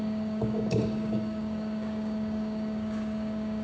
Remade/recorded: remade